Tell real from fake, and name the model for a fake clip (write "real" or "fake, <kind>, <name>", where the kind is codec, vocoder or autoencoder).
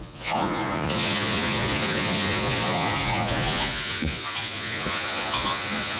fake, vocoder, Vocos